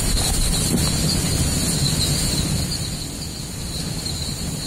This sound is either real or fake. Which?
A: real